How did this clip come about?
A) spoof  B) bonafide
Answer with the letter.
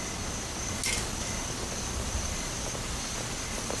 B